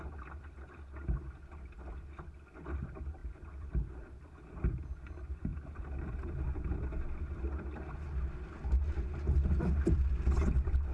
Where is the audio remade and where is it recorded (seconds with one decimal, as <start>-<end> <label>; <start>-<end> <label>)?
0.0-3.2 recorded; 3.2-4.9 remade; 4.9-10.9 recorded